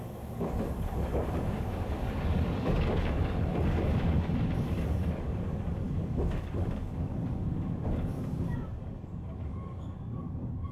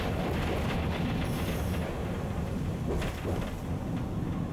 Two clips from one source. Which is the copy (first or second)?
first